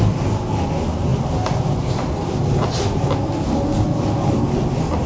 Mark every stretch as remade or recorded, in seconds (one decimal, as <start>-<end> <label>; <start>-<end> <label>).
0.0-5.1 recorded